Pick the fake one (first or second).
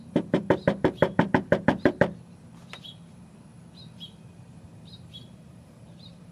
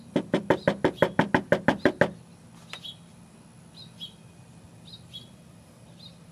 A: first